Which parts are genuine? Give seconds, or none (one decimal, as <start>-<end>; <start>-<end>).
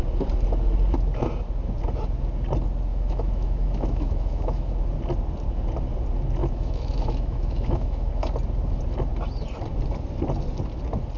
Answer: 0.0-2.9; 4.7-6.4; 8.1-11.2